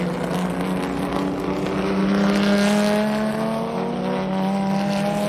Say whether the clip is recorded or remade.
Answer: recorded